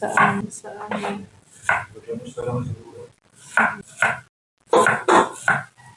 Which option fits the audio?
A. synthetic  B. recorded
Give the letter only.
B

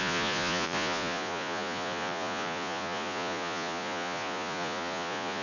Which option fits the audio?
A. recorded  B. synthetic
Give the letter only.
B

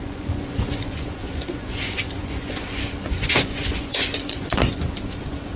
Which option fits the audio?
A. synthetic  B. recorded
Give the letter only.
A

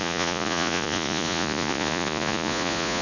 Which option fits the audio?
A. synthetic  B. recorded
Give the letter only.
A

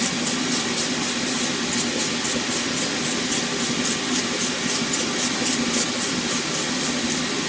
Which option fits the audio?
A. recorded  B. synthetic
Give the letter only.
A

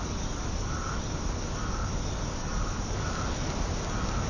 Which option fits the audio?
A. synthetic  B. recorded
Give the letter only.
B